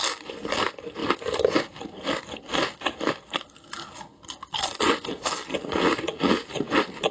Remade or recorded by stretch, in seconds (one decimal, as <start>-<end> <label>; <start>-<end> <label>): 0.0-5.7 recorded; 5.7-6.5 remade; 6.5-7.1 recorded